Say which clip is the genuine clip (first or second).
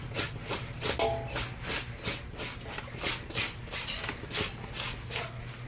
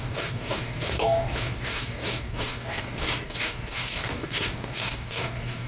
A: first